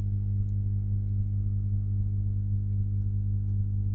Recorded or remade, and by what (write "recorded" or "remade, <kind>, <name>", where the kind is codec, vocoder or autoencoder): recorded